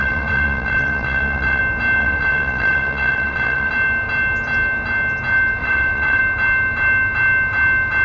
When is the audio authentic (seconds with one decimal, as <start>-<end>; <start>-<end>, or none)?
1.6-2.0; 3.7-5.6; 6.2-8.0